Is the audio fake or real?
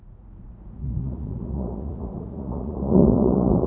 fake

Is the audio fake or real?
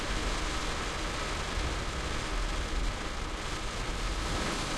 real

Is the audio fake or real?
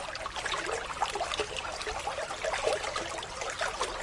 real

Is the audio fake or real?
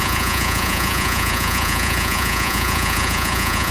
fake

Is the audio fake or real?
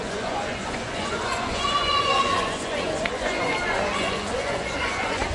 fake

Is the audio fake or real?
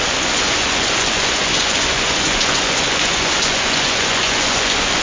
fake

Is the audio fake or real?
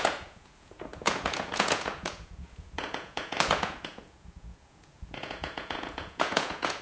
fake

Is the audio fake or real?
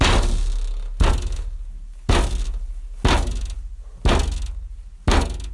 real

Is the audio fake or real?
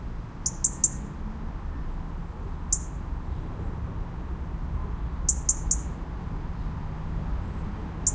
real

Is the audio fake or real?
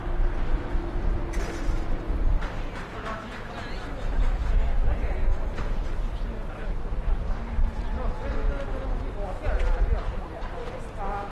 real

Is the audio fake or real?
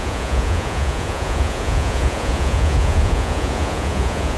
fake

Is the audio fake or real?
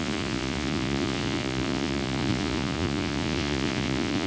fake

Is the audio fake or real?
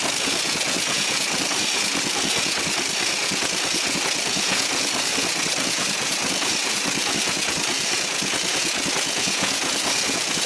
fake